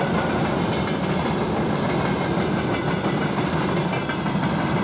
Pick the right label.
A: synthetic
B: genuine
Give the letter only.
B